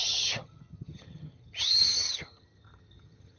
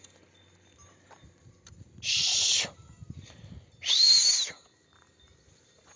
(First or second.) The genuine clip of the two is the second